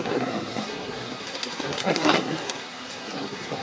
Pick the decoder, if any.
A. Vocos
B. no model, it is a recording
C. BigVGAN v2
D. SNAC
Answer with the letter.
D